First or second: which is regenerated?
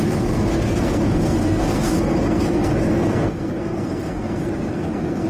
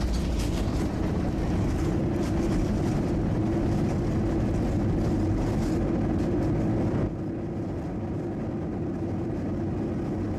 first